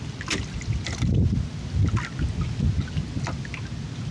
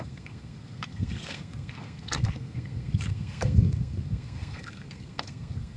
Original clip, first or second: first